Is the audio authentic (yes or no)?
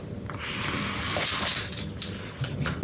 yes